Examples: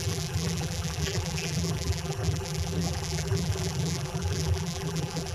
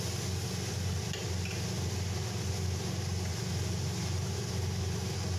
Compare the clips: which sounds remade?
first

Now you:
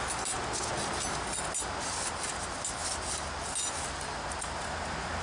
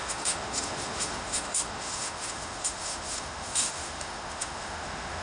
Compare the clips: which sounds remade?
second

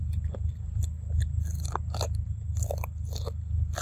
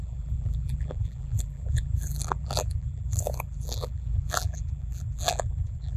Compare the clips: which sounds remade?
second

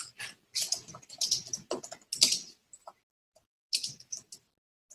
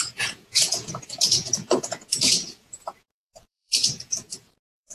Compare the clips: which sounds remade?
second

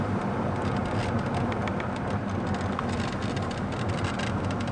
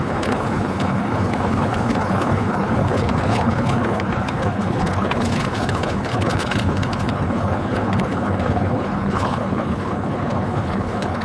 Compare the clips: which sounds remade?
second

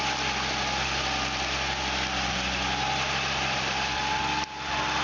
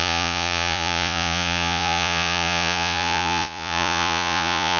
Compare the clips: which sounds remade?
second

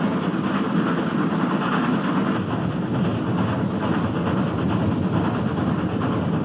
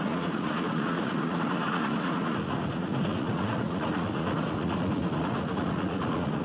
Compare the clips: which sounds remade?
second